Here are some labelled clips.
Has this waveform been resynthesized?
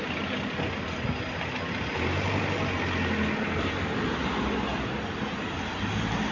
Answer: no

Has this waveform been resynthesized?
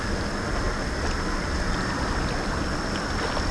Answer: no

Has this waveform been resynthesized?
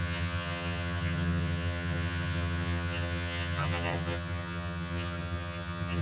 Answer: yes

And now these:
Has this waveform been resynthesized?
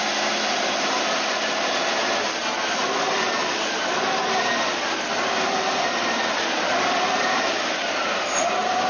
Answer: no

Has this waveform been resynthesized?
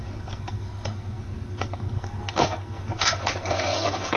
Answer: yes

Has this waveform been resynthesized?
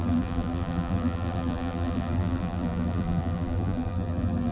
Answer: yes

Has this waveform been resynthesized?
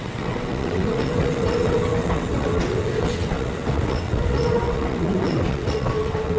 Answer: yes